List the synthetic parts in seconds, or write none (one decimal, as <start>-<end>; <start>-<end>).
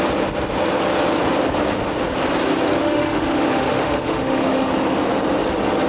2.8-4.7